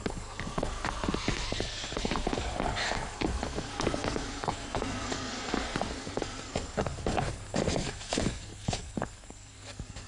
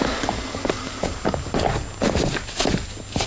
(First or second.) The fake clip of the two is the first